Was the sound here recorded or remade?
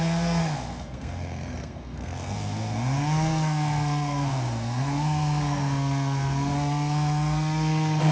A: remade